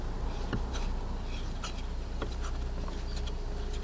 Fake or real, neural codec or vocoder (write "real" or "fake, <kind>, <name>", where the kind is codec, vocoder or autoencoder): real